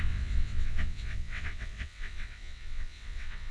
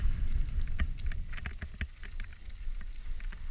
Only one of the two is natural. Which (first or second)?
second